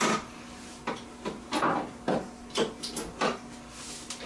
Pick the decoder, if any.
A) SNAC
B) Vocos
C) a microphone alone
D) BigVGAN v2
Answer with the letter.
C